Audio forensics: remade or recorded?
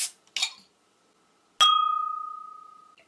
recorded